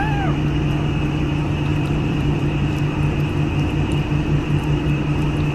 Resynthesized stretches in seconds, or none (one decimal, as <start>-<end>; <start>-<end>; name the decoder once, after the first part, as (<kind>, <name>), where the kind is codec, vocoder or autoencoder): 1.7-2.4 (vocoder, BigVGAN v2)